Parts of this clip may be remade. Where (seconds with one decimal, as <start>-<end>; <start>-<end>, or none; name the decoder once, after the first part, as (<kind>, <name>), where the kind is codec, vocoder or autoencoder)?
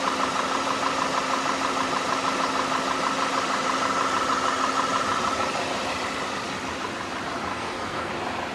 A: 7.5-8.1 (codec, SNAC)